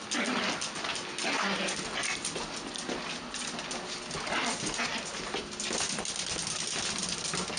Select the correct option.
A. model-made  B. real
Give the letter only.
B